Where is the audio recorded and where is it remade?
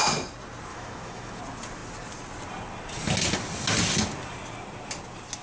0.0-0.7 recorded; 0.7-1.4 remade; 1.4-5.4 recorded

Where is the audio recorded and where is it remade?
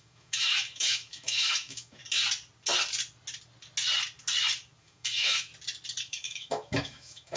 0.0-2.0 remade; 2.0-4.8 recorded; 4.8-5.5 remade; 5.5-6.0 recorded; 6.0-7.4 remade